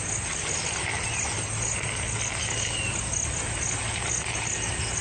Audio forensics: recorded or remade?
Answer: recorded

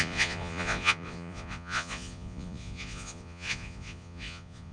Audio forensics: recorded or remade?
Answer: remade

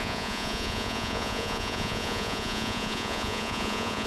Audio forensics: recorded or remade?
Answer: remade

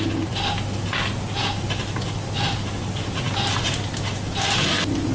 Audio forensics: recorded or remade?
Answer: recorded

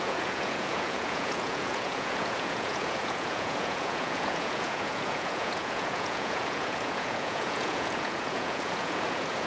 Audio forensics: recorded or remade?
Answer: remade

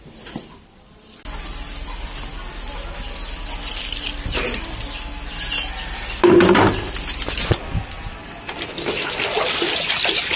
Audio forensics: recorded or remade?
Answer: recorded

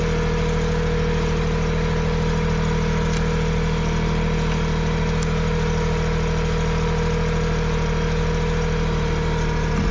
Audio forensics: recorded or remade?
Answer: recorded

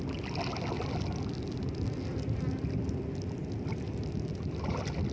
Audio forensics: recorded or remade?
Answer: recorded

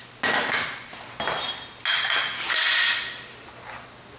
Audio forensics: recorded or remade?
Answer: recorded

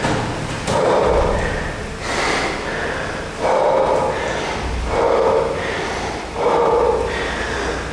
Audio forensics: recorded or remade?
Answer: recorded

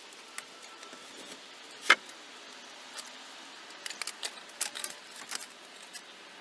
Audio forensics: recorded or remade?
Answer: recorded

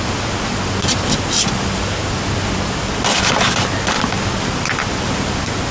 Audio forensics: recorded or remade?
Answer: recorded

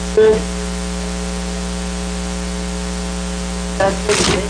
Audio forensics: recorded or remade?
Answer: recorded